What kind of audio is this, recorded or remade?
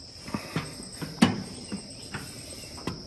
recorded